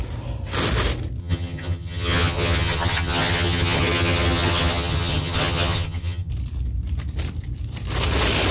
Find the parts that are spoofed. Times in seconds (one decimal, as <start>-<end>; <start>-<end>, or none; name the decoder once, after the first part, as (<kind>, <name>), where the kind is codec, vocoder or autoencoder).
1.2-6.3 (vocoder, HiFi-GAN)

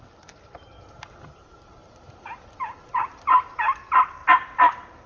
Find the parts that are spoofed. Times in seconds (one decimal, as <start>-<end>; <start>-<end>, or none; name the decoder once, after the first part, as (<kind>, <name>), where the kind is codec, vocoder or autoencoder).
0.0-4.2 (vocoder, BigVGAN v2)

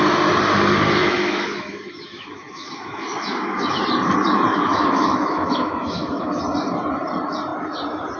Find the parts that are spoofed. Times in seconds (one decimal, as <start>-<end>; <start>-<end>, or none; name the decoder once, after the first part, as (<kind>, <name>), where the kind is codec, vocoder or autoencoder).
1.0-3.8 (autoencoder, DAC-VAE); 4.5-6.4

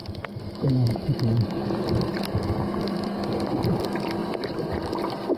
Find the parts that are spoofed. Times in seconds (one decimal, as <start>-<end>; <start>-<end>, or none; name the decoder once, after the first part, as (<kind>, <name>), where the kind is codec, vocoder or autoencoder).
0.0-3.2 (vocoder, BigVGAN v2); 4.2-4.9

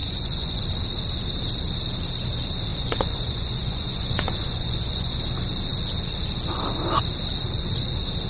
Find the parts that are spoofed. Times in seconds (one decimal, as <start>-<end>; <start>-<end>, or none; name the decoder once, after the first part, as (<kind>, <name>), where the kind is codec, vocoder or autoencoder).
0.0-0.6 (vocoder, Vocos); 2.7-5.2

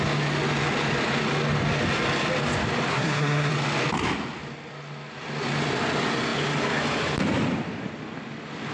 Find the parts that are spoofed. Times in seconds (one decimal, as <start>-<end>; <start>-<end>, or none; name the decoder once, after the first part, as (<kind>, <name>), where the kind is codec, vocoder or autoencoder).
2.9-3.5 (codec, SNAC)